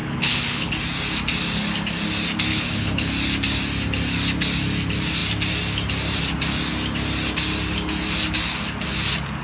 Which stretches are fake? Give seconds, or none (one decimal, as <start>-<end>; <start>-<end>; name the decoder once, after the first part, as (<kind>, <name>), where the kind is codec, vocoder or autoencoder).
0.0-0.7 (codec, HILCodec); 2.5-3.1